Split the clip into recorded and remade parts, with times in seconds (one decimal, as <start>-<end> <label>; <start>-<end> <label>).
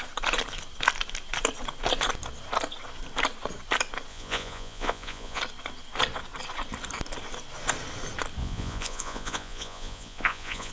0.0-4.1 recorded; 4.1-5.4 remade; 5.4-8.4 recorded; 8.4-10.7 remade